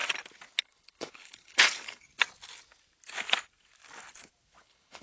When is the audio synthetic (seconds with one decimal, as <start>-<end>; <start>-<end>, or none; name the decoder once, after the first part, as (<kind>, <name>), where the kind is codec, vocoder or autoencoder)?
0.6-2.1 (codec, HILCodec); 4.6-5.0